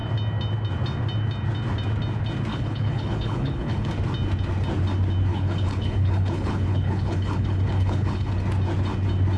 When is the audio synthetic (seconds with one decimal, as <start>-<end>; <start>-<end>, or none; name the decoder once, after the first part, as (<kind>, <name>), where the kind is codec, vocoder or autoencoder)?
2.5-3.9 (codec, HILCodec); 5.3-8.3